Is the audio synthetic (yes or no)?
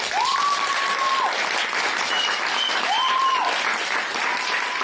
no